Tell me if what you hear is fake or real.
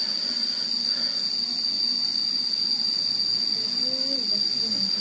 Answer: real